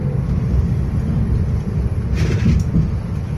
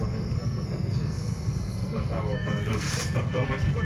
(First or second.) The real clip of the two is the first